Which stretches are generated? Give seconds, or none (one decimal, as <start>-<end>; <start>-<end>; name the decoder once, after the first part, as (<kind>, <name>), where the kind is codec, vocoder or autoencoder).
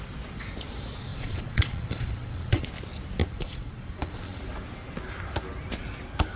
1.1-2.6 (vocoder, Vocos); 3.2-4.4